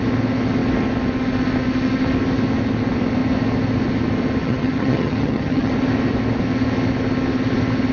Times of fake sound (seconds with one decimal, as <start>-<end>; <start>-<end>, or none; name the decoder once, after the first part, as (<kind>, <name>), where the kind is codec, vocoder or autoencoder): 4.4-5.7 (vocoder, HiFi-GAN)